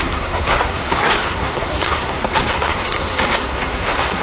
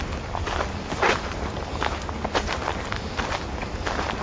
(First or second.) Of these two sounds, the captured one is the second